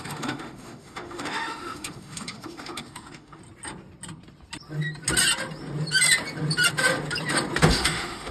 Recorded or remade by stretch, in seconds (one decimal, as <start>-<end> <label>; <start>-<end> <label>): 0.0-3.4 remade; 3.4-7.7 recorded; 7.7-8.3 remade